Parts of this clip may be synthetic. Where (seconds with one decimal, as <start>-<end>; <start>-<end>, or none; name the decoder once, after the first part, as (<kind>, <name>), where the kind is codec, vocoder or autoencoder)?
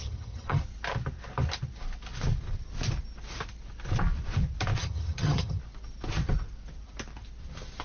0.0-0.6 (vocoder, HiFi-GAN); 4.8-5.6